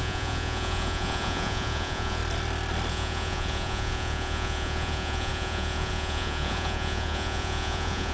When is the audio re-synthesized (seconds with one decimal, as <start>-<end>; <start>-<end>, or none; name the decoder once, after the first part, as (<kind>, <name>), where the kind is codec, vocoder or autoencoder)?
0.0-2.2 (vocoder, Vocos); 2.9-8.1